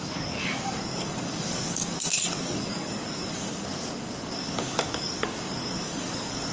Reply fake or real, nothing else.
fake